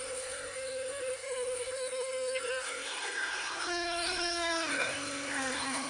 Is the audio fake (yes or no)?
yes